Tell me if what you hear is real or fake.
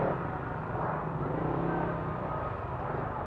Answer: real